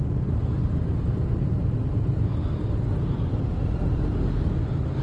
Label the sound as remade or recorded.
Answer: recorded